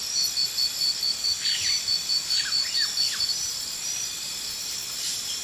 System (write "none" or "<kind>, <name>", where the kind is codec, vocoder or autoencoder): none